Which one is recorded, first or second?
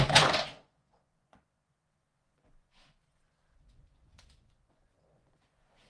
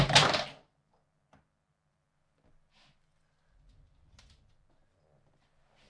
second